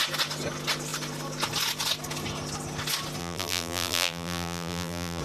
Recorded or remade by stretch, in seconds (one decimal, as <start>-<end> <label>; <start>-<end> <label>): 0.0-3.2 recorded; 3.2-5.2 remade